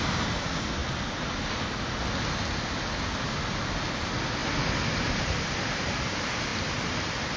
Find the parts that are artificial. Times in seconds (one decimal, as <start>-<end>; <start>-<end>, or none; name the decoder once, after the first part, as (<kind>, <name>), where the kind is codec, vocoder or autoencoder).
4.4-5.9 (vocoder, BigVGAN v2); 6.5-7.4